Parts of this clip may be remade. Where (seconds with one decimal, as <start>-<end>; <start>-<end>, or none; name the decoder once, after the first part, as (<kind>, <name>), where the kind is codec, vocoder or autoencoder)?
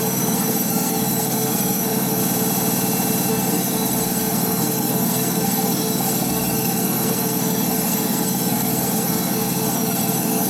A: 0.0-2.2 (codec, SNAC); 3.3-10.5